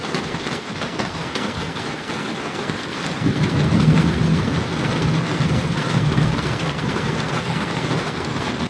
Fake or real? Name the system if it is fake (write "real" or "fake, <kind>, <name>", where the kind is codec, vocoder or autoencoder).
fake, codec, SNAC